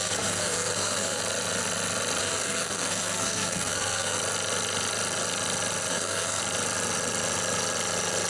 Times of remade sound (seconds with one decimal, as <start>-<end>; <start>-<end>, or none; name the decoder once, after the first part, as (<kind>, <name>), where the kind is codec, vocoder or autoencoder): 0.0-1.2 (codec, SNAC); 2.2-4.2; 5.9-6.4